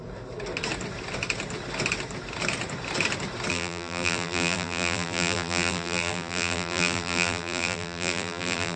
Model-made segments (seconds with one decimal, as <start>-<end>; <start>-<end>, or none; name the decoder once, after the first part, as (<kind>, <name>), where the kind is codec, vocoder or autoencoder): 3.5-8.8 (vocoder, BigVGAN v2)